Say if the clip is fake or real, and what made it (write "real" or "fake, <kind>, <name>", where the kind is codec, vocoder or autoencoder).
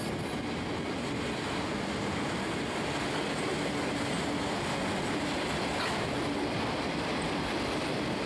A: real